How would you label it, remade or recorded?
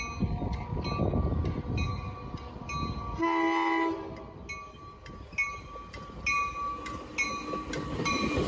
recorded